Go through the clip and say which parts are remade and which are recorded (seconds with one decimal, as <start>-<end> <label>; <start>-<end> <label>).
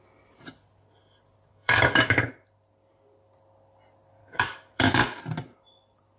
0.0-1.5 recorded; 1.5-2.3 remade; 2.3-4.2 recorded; 4.2-5.2 remade; 5.2-6.2 recorded